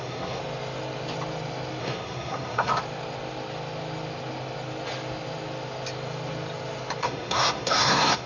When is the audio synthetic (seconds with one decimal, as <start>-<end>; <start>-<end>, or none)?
0.0-0.4; 1.8-2.7; 7.0-8.3